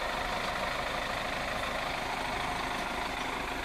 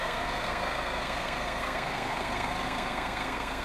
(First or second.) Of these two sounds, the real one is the first